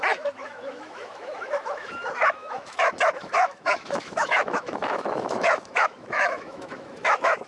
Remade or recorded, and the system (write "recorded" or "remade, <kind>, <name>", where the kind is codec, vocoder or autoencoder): remade, autoencoder, DAC-VAE